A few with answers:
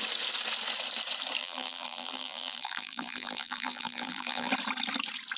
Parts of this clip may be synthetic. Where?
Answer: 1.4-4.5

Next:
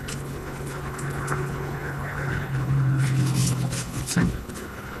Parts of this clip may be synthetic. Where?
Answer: 0.0-5.0

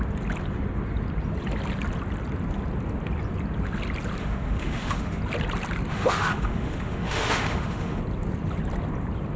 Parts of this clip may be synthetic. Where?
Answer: 4.2-5.2; 5.9-8.0

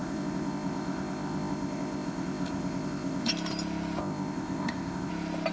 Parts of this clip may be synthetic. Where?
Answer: 0.0-3.3; 4.0-5.1

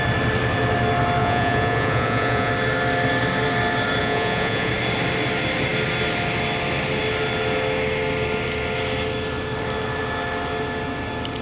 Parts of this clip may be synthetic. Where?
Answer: 1.2-2.5; 4.0-4.7

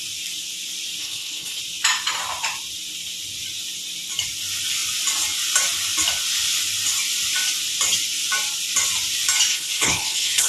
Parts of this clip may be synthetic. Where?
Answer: 1.0-1.6; 9.5-10.5

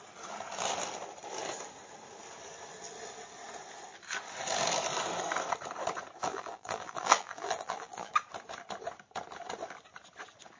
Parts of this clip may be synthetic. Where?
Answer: 6.3-8.1

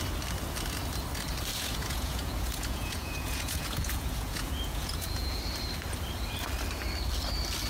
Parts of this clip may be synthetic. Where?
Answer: 1.5-5.4